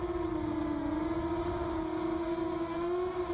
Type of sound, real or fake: real